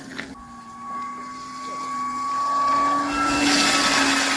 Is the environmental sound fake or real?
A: real